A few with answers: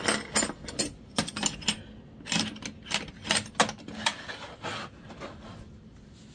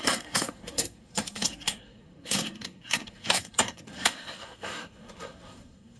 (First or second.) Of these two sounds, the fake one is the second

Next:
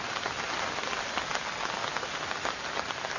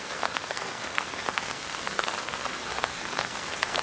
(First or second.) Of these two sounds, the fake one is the second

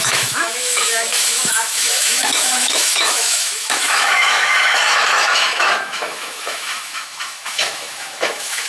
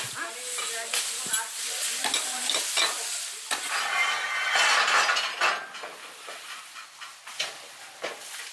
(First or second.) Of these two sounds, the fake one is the first